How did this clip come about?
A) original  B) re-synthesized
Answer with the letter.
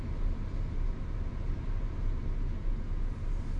A